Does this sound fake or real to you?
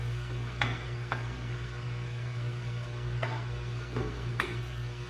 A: fake